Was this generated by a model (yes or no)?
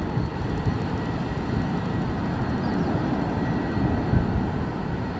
no